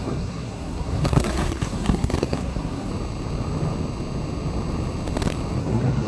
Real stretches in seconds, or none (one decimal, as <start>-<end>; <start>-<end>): 2.9-5.6

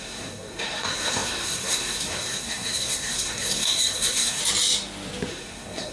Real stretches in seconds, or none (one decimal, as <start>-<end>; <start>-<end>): 4.4-5.3

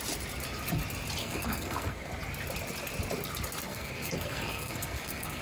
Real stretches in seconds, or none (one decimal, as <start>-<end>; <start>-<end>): 0.0-1.2; 2.1-3.7

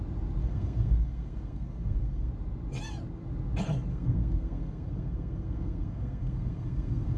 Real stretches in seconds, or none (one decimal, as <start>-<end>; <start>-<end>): 0.0-0.4; 2.3-3.9